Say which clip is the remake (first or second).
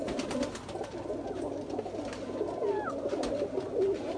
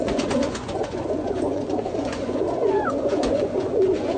second